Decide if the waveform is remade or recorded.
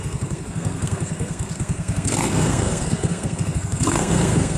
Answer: remade